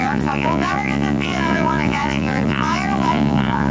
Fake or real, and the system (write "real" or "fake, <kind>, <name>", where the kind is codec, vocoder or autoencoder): fake, vocoder, Vocos